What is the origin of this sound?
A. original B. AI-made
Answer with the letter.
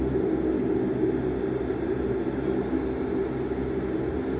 A